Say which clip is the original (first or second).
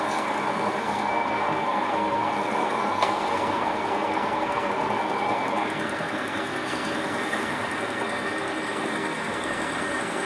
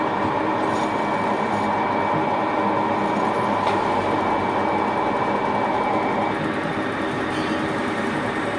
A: second